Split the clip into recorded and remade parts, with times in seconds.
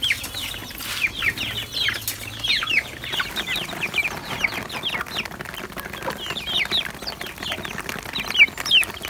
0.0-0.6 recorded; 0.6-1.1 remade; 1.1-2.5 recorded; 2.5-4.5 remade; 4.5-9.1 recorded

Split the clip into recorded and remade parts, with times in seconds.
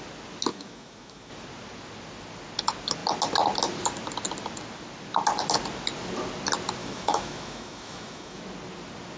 0.0-0.5 recorded; 0.5-1.3 remade; 1.3-6.8 recorded; 6.8-8.4 remade; 8.4-9.2 recorded